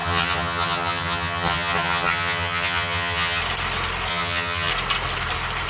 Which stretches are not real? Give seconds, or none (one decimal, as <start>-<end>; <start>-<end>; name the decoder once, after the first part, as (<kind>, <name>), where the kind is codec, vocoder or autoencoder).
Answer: 0.0-3.4 (vocoder, HiFi-GAN); 4.1-4.7